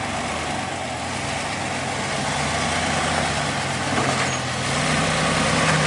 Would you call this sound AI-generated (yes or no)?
no